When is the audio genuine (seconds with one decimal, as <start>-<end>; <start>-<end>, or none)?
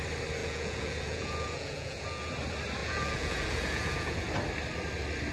0.0-0.4; 2.3-2.8; 4.3-5.3